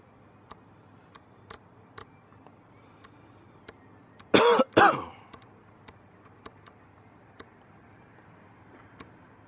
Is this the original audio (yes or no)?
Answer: yes